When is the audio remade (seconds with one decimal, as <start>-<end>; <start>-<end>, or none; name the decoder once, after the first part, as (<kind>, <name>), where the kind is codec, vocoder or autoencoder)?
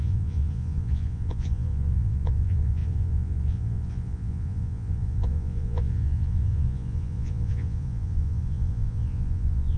0.0-9.8 (vocoder, Vocos)